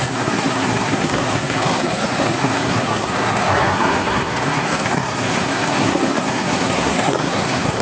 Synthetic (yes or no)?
yes